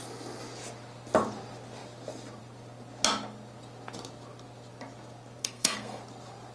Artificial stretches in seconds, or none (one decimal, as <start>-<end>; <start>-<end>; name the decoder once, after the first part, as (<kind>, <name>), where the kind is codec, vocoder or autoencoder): 5.4-6.0 (codec, SNAC)